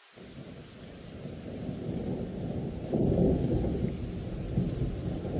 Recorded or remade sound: recorded